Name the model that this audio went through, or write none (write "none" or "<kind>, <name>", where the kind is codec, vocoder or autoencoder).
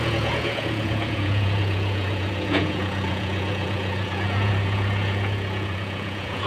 vocoder, Vocos